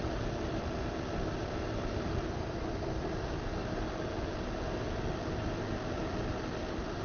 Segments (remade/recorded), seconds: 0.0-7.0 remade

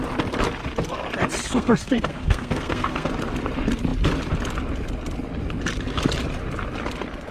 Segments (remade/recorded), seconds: 0.0-1.4 recorded; 1.4-3.1 remade; 3.1-7.3 recorded

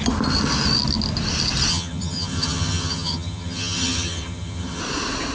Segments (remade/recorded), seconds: 0.0-1.7 recorded; 1.7-4.8 remade; 4.8-5.3 recorded